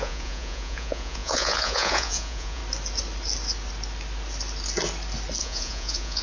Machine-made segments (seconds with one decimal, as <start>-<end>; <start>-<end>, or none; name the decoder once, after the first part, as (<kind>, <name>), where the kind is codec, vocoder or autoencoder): 0.0-2.6 (vocoder, Vocos); 5.4-6.2